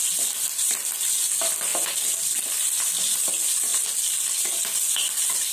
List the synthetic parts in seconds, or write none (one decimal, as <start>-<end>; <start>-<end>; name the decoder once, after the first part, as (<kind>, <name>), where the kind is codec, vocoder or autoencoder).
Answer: none